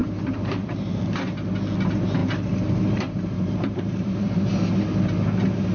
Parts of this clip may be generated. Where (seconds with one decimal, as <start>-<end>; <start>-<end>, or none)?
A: 0.0-1.0; 2.2-4.7